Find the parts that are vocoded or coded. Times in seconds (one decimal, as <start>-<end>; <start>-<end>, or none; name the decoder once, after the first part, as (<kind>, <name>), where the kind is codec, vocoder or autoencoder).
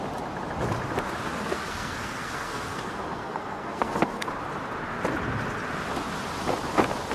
1.3-4.3 (codec, SNAC)